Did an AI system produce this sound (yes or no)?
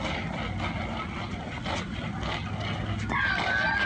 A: no